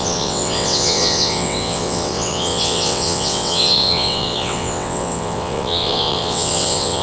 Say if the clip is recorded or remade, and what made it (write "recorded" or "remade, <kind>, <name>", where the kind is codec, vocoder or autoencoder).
remade, vocoder, WaveNeXt